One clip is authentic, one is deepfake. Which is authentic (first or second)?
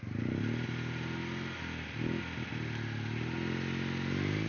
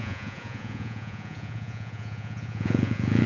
first